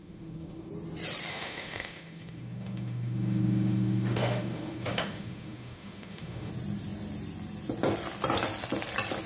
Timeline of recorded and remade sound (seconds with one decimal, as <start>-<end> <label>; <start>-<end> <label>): 0.0-0.7 remade; 0.7-1.3 recorded; 1.3-6.5 remade; 6.5-9.3 recorded